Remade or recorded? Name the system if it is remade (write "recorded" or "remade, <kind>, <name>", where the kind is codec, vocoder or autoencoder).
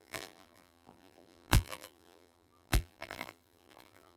remade, vocoder, BigVGAN v2